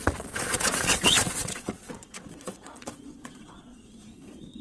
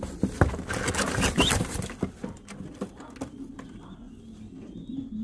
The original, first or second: second